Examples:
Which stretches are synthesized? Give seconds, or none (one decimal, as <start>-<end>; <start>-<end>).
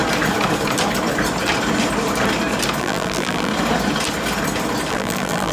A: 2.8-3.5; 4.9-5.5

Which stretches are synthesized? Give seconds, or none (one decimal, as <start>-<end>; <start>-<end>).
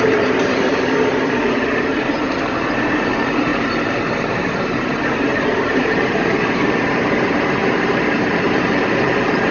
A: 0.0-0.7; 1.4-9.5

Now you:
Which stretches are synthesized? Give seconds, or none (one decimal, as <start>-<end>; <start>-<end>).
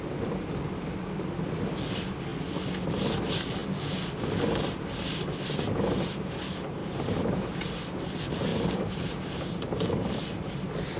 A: 6.8-7.6; 8.5-10.2